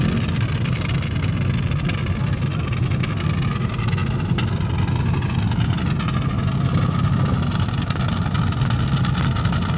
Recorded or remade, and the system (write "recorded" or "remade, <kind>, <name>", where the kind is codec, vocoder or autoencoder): recorded